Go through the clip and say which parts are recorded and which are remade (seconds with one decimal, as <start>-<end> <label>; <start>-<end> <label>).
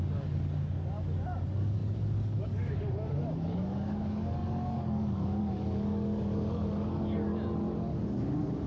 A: 0.0-7.3 remade; 7.3-7.9 recorded; 7.9-8.7 remade